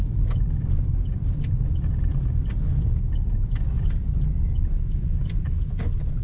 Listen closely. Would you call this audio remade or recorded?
recorded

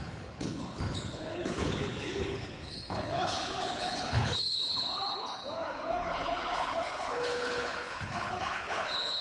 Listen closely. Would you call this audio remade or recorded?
remade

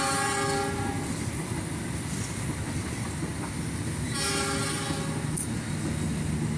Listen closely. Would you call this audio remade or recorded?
recorded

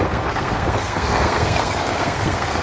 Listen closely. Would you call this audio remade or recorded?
remade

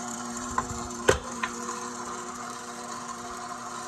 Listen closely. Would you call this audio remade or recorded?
remade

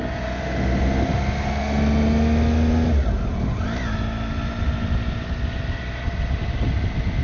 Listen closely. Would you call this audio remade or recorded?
recorded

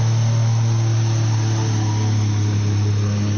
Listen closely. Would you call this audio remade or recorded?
recorded